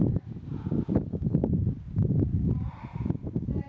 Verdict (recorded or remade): recorded